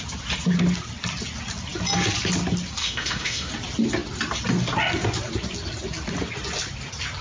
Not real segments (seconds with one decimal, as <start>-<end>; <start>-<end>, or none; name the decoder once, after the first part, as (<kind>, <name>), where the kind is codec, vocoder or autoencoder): 2.8-3.5 (autoencoder, DAC-VAE)